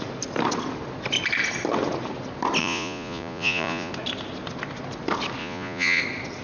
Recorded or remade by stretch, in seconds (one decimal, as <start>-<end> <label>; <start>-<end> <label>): 0.0-2.6 recorded; 2.6-3.9 remade; 3.9-5.4 recorded; 5.4-6.0 remade; 6.0-6.4 recorded

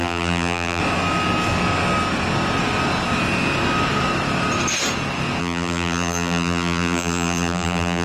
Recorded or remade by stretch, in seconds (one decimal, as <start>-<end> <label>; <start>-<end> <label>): 0.0-0.8 remade; 0.8-5.4 recorded; 5.4-8.0 remade

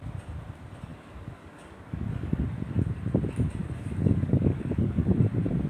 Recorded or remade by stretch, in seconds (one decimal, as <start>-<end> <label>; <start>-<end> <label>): 0.0-0.9 recorded; 0.9-2.4 remade; 2.4-3.6 recorded; 3.6-5.1 remade; 5.1-5.7 recorded

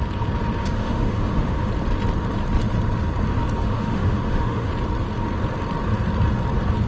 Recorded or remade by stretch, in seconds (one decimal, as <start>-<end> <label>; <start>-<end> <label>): 0.0-0.6 recorded; 0.6-1.7 remade; 1.7-3.6 recorded; 3.6-4.7 remade; 4.7-6.9 recorded

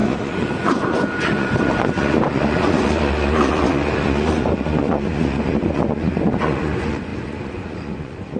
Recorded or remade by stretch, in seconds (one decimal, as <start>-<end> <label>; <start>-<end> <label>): 0.0-8.4 remade